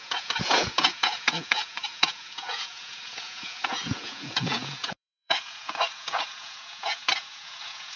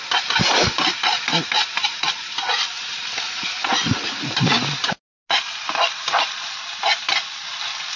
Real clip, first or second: second